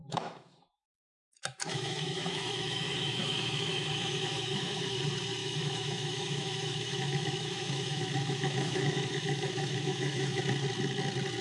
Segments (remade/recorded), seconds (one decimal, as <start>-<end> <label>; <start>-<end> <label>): 0.0-5.0 remade; 5.0-5.4 recorded; 5.4-10.4 remade; 10.4-11.4 recorded